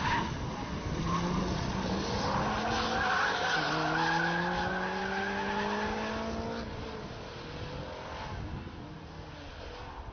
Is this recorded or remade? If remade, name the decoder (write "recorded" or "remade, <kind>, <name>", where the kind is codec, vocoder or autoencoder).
recorded